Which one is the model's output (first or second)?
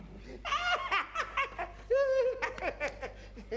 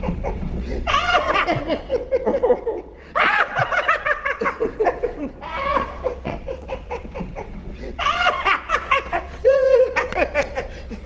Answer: second